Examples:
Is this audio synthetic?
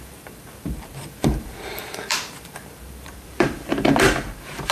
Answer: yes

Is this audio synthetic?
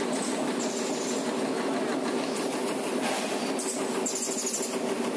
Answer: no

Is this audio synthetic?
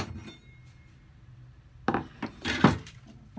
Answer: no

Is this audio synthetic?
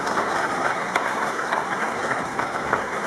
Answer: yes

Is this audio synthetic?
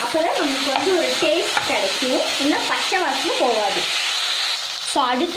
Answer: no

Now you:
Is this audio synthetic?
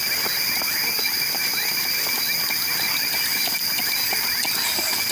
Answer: no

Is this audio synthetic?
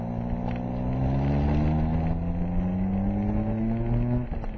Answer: no